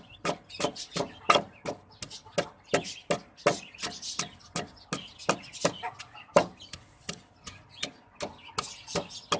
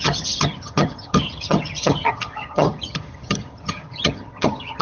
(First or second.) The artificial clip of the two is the second